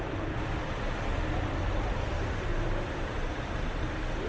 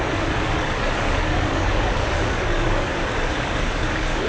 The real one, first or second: first